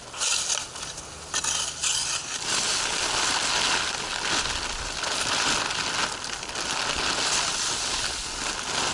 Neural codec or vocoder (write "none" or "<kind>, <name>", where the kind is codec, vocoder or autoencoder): none